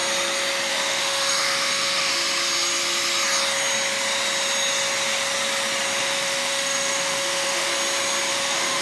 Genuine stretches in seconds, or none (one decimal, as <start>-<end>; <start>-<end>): 0.0-0.7; 2.1-6.0; 7.7-8.3